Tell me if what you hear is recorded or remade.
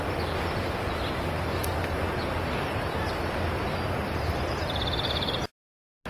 recorded